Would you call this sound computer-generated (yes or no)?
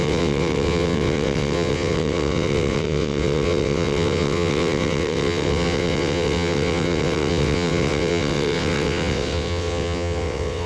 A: yes